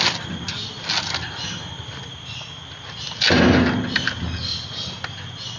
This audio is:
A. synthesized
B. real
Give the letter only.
B